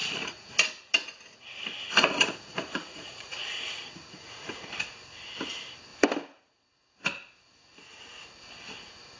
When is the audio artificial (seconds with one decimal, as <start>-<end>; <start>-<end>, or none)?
0.0-0.5; 1.8-4.7